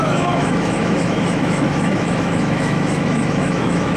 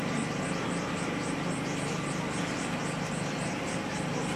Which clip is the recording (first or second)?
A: second